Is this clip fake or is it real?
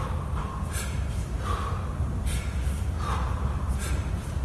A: real